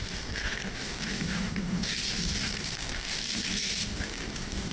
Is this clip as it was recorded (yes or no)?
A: no